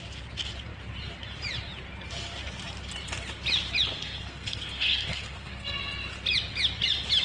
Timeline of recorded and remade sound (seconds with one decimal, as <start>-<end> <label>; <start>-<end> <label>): 0.0-3.9 recorded; 3.9-5.8 remade; 5.8-7.2 recorded